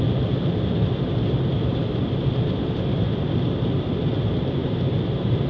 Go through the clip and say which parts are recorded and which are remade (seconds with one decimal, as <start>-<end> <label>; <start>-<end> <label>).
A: 0.0-4.6 recorded; 4.6-5.5 remade